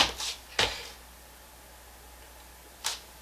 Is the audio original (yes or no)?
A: yes